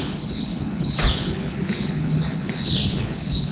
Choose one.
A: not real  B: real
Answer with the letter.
A